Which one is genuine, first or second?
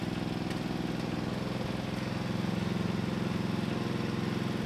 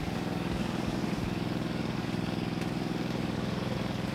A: first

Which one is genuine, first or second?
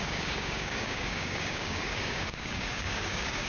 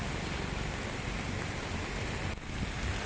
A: second